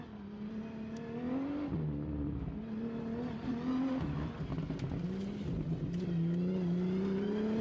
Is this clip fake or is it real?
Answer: real